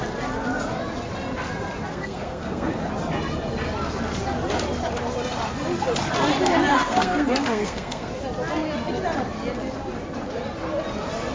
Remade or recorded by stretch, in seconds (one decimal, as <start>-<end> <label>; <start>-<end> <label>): 0.0-1.9 recorded; 1.9-2.7 remade; 2.7-6.7 recorded; 6.7-8.1 remade; 8.1-11.3 recorded